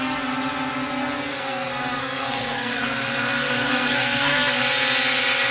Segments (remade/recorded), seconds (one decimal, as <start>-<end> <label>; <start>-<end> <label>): 0.0-1.3 recorded; 1.3-4.6 remade; 4.6-5.5 recorded